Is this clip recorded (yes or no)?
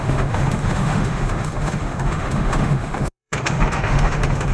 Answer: no